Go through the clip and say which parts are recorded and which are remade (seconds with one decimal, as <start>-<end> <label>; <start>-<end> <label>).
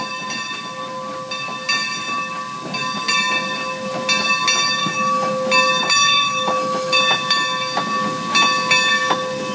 0.0-4.8 recorded; 4.8-5.3 remade; 5.3-5.8 recorded; 5.8-7.0 remade; 7.0-9.5 recorded